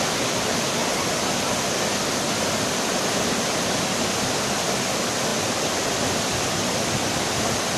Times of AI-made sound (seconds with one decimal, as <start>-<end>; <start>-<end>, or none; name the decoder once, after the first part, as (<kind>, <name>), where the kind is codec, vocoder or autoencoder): 5.3-5.9 (vocoder, BigVGAN v2)